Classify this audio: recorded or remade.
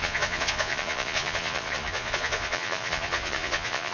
remade